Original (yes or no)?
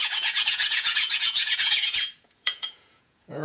no